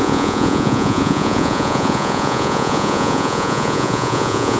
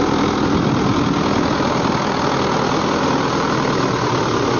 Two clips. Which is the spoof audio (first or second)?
first